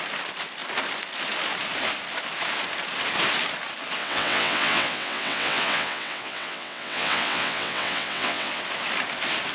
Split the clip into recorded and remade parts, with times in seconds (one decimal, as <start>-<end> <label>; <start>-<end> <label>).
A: 0.0-4.0 recorded; 4.0-8.6 remade; 8.6-9.5 recorded

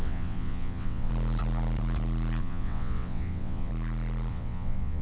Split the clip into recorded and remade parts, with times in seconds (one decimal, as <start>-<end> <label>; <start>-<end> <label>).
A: 0.0-1.1 remade; 1.1-2.4 recorded; 2.4-3.7 remade; 3.7-4.3 recorded; 4.3-5.0 remade